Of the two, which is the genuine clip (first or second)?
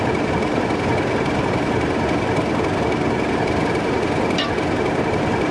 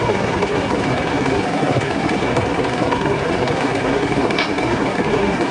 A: first